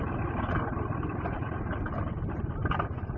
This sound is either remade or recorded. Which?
recorded